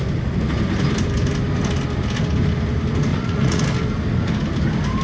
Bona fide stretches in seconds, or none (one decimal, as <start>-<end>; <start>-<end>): 0.0-3.1; 3.6-5.0